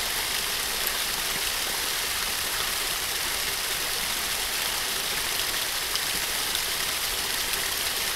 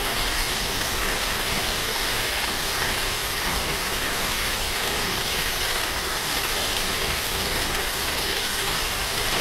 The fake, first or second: second